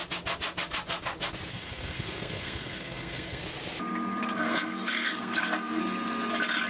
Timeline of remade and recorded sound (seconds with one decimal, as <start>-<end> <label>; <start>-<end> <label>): 0.0-1.5 recorded; 1.5-3.4 remade; 3.4-4.2 recorded; 4.2-5.8 remade; 5.8-6.7 recorded